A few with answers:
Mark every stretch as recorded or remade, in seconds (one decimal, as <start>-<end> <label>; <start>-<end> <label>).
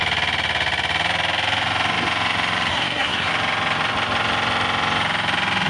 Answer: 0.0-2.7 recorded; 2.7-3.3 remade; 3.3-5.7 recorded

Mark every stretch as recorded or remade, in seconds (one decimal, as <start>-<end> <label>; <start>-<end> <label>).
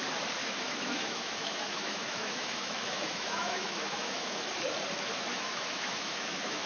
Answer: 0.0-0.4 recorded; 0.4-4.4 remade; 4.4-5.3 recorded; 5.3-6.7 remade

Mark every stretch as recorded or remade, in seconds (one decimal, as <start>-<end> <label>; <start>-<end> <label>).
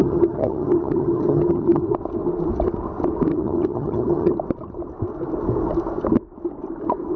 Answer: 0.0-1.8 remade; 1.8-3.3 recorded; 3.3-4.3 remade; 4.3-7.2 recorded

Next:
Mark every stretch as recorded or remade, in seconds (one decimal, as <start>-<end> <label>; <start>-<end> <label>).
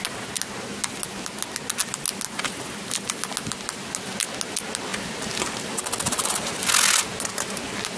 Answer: 0.0-8.0 recorded